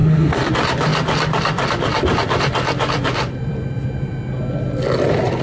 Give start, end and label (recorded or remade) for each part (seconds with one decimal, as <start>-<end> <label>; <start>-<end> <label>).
0.0-0.5 remade; 0.5-5.4 recorded